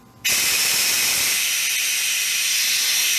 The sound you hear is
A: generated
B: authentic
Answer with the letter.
B